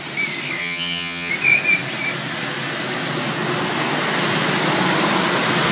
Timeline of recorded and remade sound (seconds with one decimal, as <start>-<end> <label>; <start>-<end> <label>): 0.0-0.6 recorded; 0.6-1.3 remade; 1.3-5.7 recorded